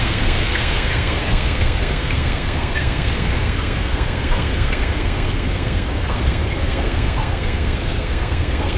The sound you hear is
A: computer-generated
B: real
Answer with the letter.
A